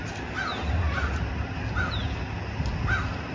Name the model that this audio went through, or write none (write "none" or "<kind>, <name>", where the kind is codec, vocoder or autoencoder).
none